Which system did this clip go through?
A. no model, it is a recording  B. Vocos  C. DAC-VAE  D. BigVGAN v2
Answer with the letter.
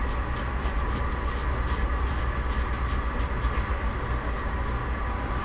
A